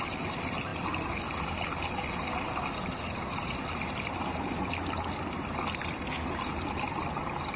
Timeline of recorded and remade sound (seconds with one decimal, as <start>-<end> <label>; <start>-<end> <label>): 0.0-7.6 recorded